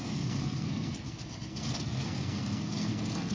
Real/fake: fake